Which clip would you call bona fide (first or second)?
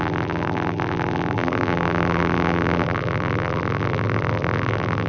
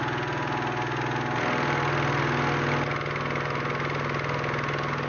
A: second